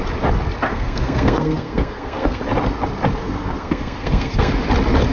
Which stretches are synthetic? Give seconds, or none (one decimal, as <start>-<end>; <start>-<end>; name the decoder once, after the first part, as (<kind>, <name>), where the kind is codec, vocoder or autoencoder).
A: 0.7-2.4 (codec, SNAC); 3.2-4.5